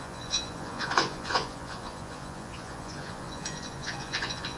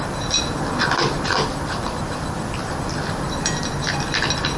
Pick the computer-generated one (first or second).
first